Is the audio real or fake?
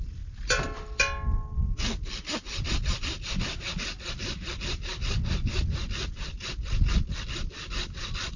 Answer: real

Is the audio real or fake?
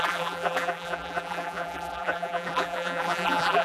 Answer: fake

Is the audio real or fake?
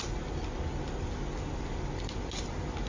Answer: real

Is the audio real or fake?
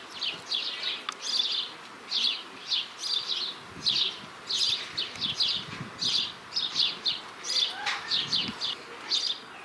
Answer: real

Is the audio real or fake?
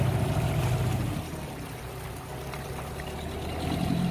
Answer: real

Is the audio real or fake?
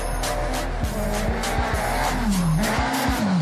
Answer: real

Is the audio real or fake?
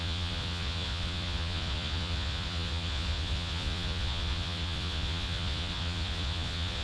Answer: fake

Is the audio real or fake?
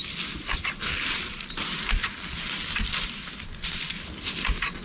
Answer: real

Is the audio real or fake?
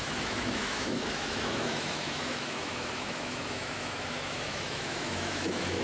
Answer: fake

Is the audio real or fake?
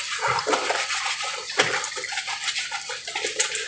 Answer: real